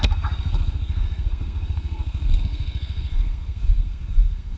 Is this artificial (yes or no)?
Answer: yes